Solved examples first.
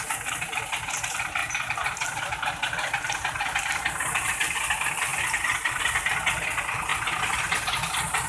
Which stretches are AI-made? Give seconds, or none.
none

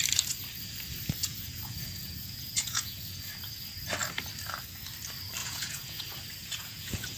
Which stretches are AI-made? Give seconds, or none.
1.2-3.3; 5.4-6.0; 6.4-7.2